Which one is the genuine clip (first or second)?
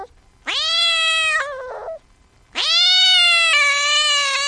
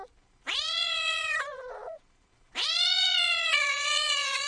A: first